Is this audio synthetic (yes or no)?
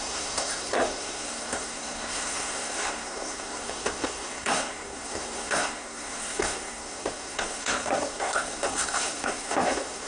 yes